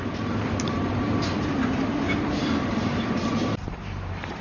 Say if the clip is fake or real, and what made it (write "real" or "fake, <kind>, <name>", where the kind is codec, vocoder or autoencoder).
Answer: fake, vocoder, BigVGAN v2